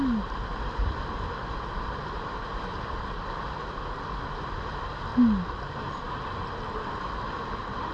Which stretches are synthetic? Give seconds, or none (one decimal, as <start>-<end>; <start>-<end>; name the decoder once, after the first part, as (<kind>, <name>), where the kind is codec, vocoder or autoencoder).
1.4-3.6 (vocoder, BigVGAN v2)

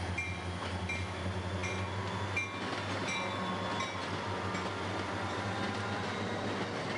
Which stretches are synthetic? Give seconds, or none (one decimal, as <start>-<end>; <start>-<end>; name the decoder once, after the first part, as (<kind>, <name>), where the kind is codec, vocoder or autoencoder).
none

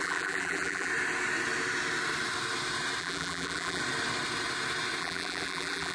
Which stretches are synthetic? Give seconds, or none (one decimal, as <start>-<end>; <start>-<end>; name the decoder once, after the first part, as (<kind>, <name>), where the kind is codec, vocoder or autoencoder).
0.0-0.9 (vocoder, BigVGAN v2); 3.0-3.8; 5.0-5.9

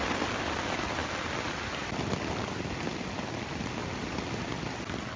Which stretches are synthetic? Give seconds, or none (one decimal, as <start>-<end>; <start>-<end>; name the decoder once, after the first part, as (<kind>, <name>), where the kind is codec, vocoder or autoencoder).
none

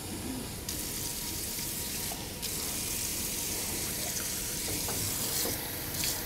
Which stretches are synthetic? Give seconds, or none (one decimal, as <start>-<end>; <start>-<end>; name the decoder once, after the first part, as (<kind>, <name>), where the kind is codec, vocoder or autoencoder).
1.1-2.3 (vocoder, BigVGAN v2); 3.1-5.0